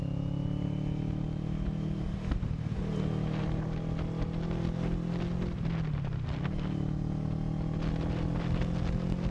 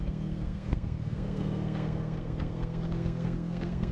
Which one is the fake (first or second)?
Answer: second